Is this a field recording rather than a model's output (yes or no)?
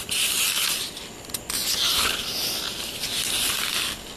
yes